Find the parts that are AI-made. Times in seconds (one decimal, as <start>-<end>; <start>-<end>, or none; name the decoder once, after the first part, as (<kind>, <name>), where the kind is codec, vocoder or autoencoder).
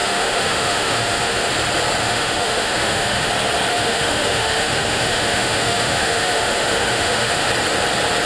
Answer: 0.0-1.5 (autoencoder, DAC-VAE); 2.0-3.3; 3.7-7.5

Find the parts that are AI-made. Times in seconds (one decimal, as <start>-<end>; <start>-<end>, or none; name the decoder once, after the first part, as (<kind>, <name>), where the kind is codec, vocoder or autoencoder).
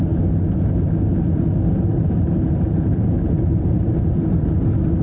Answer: 3.5-4.3 (vocoder, BigVGAN v2)